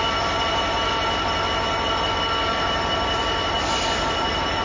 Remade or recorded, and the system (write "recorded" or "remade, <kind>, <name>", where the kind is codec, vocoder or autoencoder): recorded